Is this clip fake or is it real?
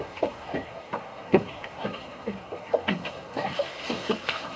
fake